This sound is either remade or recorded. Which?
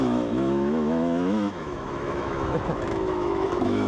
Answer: remade